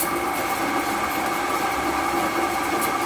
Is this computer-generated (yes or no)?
no